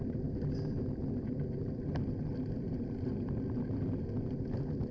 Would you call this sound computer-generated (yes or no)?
no